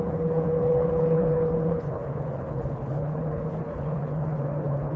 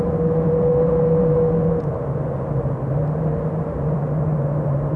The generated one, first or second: first